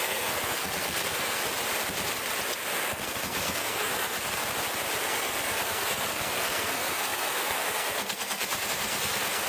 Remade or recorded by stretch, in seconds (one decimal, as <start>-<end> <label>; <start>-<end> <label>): 0.0-1.4 remade; 1.4-2.9 recorded; 2.9-4.4 remade; 4.4-5.0 recorded; 5.0-9.5 remade